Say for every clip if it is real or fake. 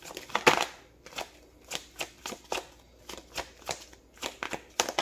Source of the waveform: real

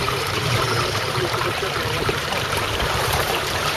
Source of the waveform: fake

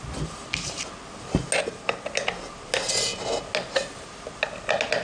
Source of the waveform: real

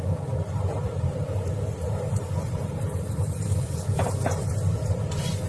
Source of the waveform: fake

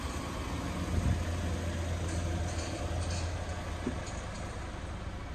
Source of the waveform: real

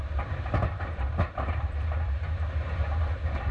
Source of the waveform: fake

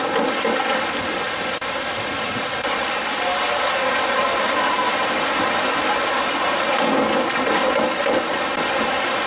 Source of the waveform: real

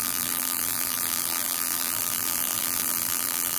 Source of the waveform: fake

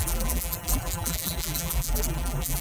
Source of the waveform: fake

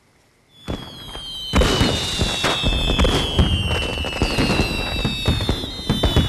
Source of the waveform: real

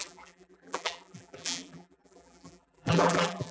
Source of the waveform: fake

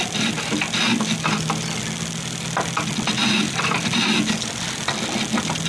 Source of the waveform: real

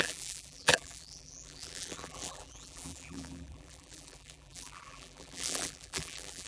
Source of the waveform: fake